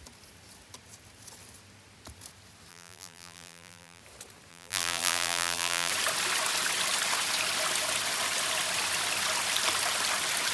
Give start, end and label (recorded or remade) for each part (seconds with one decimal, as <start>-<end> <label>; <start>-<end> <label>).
0.0-2.7 recorded; 2.7-4.0 remade; 4.0-4.5 recorded; 4.5-5.9 remade; 5.9-10.5 recorded

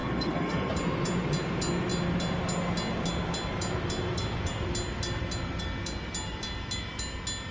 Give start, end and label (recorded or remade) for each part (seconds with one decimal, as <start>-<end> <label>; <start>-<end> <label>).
0.0-0.7 remade; 0.7-7.5 recorded